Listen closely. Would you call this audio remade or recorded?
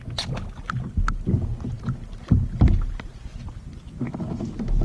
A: recorded